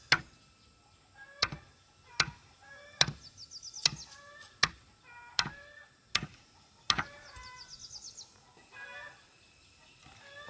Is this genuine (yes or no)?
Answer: yes